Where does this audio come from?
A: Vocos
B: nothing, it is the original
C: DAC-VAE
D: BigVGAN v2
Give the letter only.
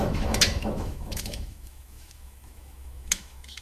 C